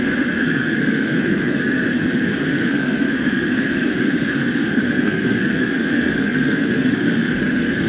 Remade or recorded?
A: remade